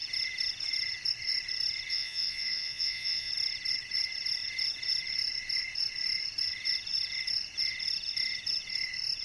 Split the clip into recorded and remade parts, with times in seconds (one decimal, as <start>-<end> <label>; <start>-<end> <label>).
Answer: 0.0-1.9 recorded; 1.9-3.3 remade; 3.3-9.2 recorded